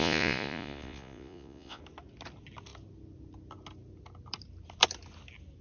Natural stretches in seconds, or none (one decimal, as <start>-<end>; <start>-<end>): 1.8-5.6